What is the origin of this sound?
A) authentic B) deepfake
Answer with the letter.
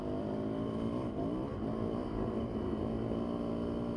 A